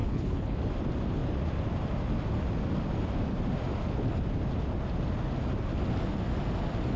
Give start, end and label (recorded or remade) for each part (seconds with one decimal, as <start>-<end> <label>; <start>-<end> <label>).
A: 0.0-0.6 remade; 0.6-7.0 recorded